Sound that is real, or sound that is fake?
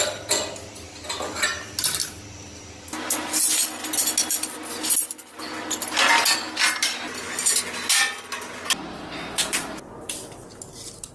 real